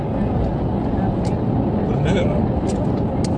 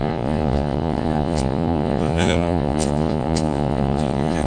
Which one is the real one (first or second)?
first